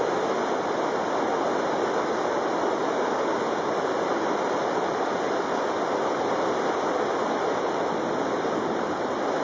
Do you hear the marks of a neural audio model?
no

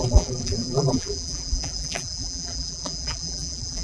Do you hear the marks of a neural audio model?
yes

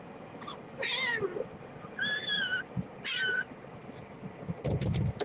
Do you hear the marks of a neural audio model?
no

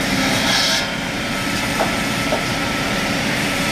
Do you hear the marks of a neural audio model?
yes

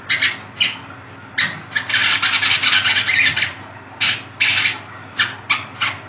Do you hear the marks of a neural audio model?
no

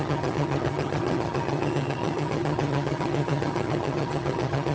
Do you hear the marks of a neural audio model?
yes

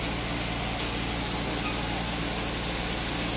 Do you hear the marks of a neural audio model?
no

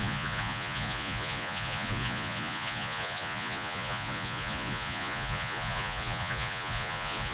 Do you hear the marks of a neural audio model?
yes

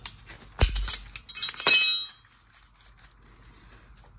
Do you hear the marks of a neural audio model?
no